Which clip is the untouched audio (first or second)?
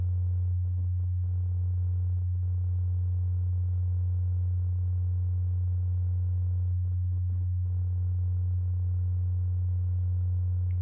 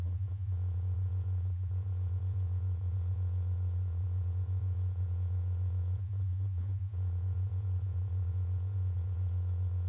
first